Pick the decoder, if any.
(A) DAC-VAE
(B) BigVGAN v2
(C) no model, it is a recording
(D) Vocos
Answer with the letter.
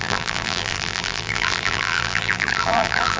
B